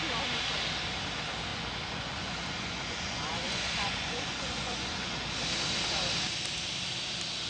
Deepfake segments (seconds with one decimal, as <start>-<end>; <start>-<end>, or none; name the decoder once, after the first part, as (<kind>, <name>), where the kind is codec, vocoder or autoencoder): 1.5-5.2 (vocoder, Vocos)

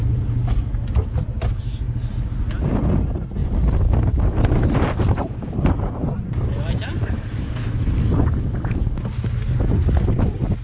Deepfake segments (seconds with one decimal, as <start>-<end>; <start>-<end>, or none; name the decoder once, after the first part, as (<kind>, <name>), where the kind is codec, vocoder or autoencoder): 3.4-7.5 (vocoder, BigVGAN v2)

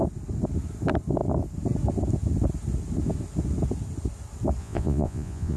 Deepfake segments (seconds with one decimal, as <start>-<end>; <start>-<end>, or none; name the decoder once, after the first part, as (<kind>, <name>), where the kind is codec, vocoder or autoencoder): 4.6-5.6 (vocoder, Vocos)

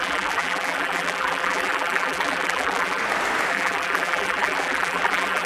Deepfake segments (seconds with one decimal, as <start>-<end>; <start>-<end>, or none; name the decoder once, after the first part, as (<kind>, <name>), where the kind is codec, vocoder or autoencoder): 0.0-3.0 (vocoder, BigVGAN v2); 3.5-5.5

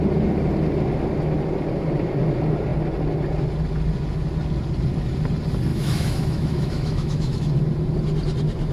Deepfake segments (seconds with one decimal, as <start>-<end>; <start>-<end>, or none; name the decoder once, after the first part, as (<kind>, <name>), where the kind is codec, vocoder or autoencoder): 5.7-7.5 (autoencoder, DAC-VAE)

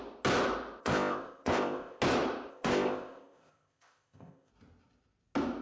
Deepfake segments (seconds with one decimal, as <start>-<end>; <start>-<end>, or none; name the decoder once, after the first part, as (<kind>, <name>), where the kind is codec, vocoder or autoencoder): 0.8-2.0 (codec, ZipCodec); 2.5-4.5